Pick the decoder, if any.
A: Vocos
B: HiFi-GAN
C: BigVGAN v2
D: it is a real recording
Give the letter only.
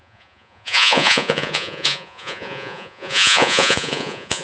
A